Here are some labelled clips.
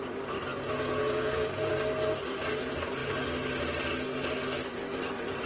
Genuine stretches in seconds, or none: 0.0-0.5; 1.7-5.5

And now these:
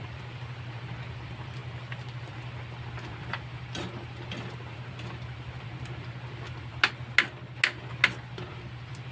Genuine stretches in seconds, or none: 1.6-2.2; 6.7-8.5

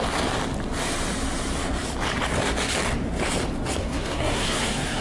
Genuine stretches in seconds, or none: 0.0-3.8

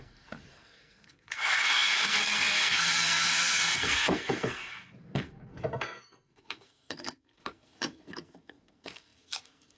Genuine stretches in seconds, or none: none

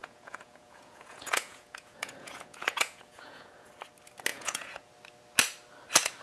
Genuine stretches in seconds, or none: 3.7-4.3; 4.9-6.2

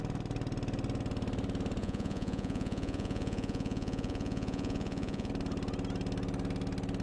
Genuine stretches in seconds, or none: 0.0-1.8; 5.3-7.0